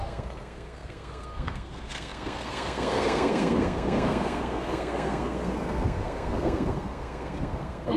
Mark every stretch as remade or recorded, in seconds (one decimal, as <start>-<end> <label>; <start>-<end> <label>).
0.0-8.0 remade